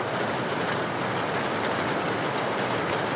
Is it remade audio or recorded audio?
remade